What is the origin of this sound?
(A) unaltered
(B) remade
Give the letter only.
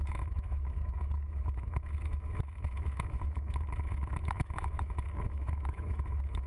B